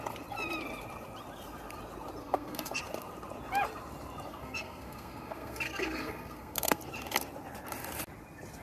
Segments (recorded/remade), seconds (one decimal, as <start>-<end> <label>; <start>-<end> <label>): 0.0-2.2 recorded; 2.2-2.8 remade; 2.8-4.3 recorded; 4.3-6.8 remade; 6.8-8.6 recorded

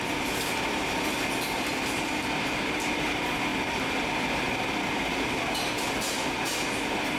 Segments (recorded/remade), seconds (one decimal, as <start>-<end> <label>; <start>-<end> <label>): 0.0-7.2 recorded

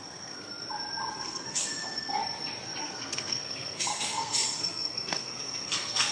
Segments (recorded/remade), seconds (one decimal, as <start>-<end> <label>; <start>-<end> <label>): 0.0-0.5 remade; 0.5-1.1 recorded; 1.1-2.2 remade; 2.2-2.8 recorded; 2.8-6.1 remade

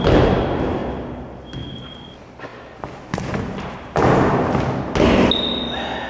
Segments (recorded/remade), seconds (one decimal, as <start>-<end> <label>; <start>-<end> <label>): 0.0-6.1 recorded

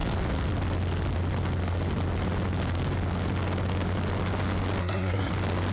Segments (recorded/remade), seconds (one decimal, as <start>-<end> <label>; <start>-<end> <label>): 0.0-4.8 recorded; 4.8-5.3 remade; 5.3-5.7 recorded